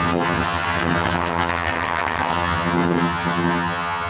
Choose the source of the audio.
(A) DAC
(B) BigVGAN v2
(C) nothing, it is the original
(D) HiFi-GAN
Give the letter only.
D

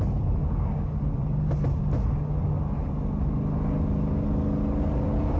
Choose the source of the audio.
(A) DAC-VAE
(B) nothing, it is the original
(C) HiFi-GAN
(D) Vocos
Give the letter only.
B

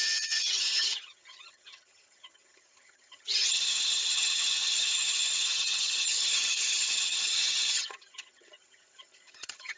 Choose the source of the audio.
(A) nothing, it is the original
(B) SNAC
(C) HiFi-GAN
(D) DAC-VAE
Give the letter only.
C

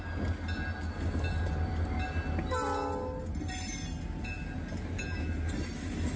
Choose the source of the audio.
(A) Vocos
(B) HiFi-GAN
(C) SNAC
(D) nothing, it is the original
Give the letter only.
D